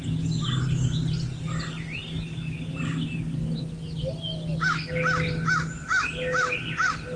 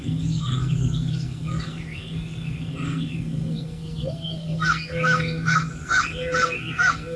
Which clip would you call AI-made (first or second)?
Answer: second